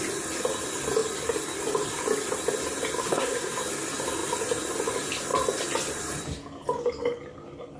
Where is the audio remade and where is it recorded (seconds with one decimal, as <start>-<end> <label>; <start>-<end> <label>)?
0.0-3.0 recorded; 3.0-3.6 remade; 3.6-7.8 recorded